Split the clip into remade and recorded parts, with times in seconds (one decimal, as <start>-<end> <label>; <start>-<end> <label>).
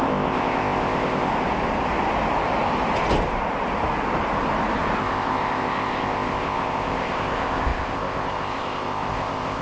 0.0-1.3 remade; 1.3-5.0 recorded; 5.0-9.6 remade